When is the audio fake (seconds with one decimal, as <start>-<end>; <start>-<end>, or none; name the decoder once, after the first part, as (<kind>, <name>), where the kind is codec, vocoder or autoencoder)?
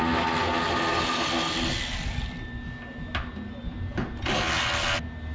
none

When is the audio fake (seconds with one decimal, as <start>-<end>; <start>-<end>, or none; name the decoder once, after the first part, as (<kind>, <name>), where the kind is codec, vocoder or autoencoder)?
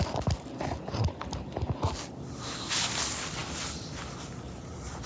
none